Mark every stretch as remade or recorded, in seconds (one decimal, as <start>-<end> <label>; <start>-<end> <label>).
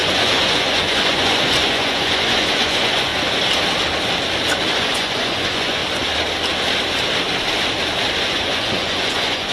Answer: 0.0-3.1 remade; 3.1-4.8 recorded; 4.8-5.8 remade; 5.8-8.2 recorded; 8.2-9.5 remade